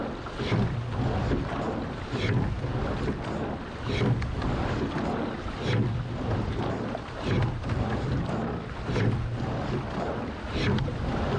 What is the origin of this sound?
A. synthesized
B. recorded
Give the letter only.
B